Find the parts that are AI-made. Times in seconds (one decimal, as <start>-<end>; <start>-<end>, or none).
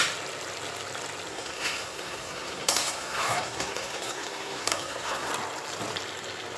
1.3-5.3